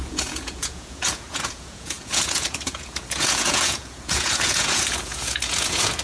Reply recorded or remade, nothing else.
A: remade